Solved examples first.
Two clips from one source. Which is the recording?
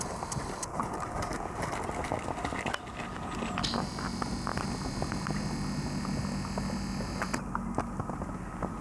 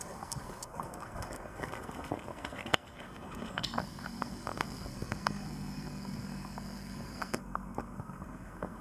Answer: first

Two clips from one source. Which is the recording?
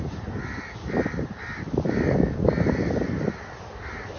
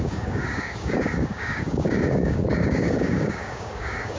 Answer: first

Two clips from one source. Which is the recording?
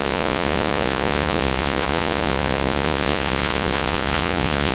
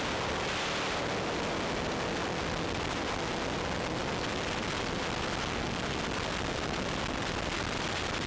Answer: second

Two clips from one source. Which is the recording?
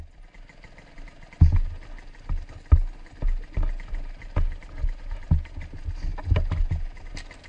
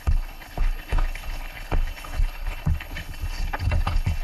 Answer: first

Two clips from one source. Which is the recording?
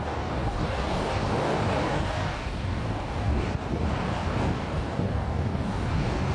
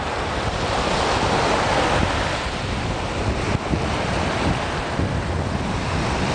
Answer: second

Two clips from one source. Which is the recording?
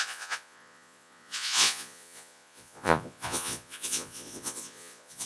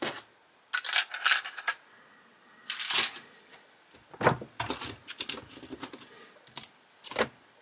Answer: second